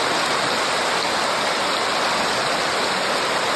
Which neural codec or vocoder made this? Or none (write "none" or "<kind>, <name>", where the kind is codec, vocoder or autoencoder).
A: none